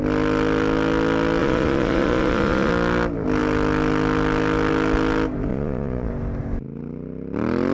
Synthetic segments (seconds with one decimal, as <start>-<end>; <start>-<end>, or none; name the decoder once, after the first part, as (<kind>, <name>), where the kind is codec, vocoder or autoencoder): 1.4-2.7 (vocoder, Vocos); 5.5-6.1